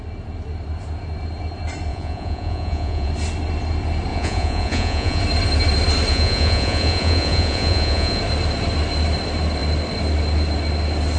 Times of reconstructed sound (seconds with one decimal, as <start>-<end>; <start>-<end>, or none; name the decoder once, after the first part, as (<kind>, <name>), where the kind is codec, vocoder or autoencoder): 1.9-3.1 (vocoder, Vocos); 4.1-5.2; 6.1-8.2